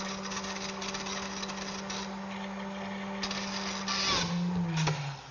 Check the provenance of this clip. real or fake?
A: real